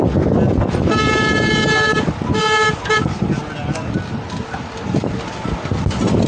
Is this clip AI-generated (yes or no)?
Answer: no